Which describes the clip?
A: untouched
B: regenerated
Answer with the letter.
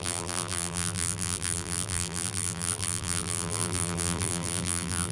B